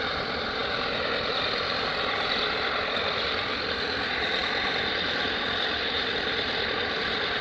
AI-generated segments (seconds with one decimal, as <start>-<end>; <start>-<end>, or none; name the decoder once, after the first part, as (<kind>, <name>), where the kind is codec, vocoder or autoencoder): 0.0-7.4 (vocoder, BigVGAN v2)